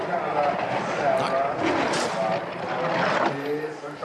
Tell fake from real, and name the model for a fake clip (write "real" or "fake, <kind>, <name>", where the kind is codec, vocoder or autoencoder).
real